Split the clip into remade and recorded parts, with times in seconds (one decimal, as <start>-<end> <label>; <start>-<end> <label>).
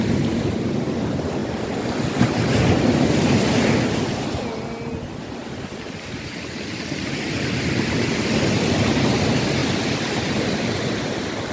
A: 0.0-11.5 recorded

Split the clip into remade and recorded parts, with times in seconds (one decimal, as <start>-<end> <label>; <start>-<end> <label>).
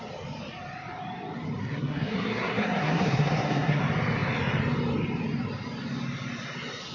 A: 0.0-1.6 recorded; 1.6-3.8 remade; 3.8-6.9 recorded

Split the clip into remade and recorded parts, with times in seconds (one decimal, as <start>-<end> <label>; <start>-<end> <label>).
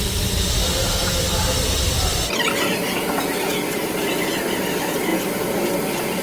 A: 0.0-6.2 recorded